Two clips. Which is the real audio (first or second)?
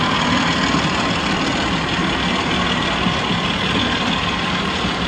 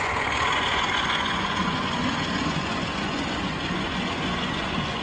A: first